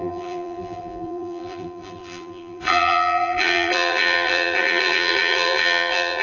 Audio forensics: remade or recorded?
remade